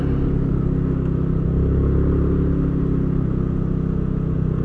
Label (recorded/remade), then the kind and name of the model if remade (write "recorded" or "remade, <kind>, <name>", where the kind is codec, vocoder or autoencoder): recorded